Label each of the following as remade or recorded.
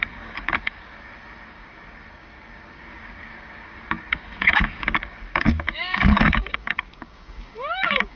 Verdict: remade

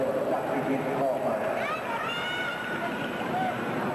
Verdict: recorded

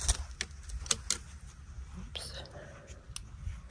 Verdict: recorded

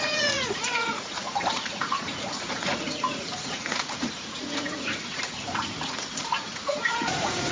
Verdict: remade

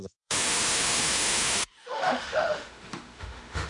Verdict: remade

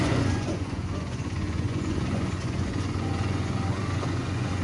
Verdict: remade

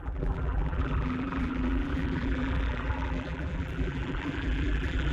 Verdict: remade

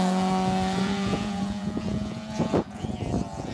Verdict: remade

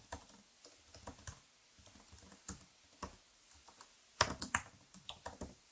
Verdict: recorded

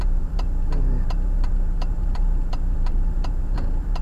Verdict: remade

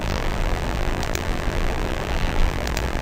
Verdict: remade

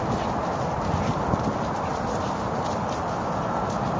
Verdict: recorded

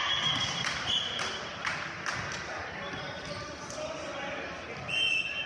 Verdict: recorded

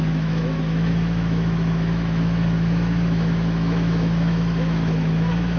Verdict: remade